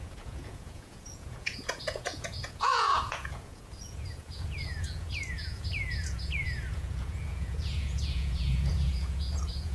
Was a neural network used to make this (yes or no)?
yes